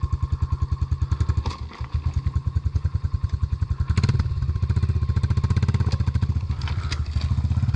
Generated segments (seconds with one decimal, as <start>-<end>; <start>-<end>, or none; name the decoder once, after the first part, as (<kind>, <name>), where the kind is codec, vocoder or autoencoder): 2.4-3.7 (vocoder, Vocos)